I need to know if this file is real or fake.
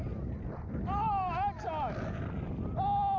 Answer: real